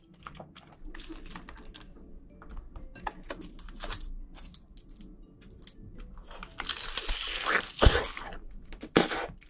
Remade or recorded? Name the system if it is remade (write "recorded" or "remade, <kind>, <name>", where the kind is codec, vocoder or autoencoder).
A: recorded